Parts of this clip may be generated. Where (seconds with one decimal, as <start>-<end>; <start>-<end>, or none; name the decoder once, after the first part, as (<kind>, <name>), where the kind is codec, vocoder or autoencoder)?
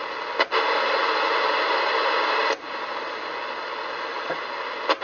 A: none